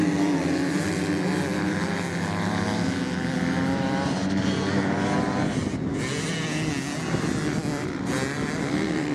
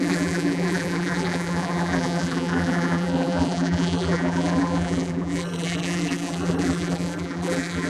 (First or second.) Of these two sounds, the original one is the first